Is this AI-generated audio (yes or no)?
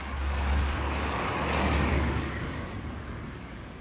yes